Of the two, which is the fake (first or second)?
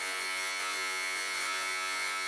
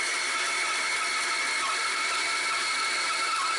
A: first